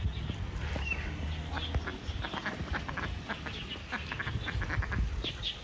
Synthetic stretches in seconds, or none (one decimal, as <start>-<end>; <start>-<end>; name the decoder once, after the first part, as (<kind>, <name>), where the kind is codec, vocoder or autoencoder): 1.9-3.8 (vocoder, BigVGAN v2)